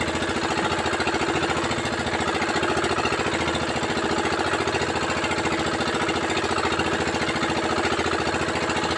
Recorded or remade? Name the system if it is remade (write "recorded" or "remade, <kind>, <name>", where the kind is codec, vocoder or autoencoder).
recorded